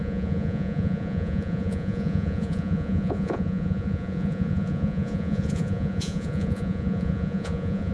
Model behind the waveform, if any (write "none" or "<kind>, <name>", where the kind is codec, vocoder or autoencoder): vocoder, Vocos